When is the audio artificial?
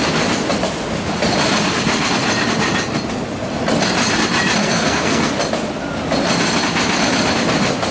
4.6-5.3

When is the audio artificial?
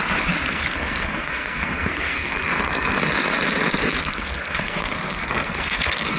0.5-3.0; 4.0-6.2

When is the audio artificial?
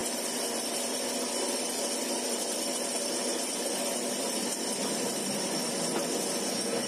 none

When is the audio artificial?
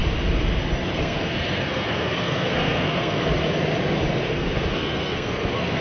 0.9-3.2; 4.2-5.8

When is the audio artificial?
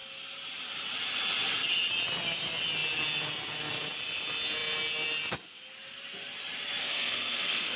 6.8-7.8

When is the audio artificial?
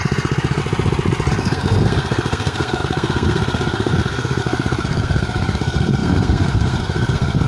0.0-0.6; 1.3-7.5